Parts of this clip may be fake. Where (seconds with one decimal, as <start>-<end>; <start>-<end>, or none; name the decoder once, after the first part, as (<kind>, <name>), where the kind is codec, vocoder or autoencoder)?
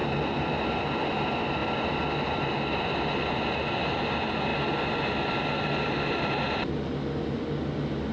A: none